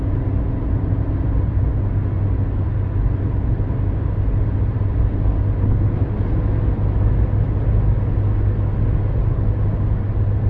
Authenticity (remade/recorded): recorded